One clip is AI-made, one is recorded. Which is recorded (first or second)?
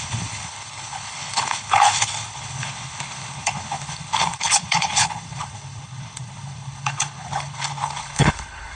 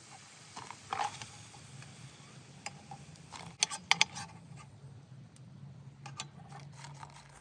second